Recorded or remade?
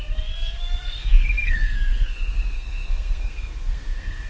remade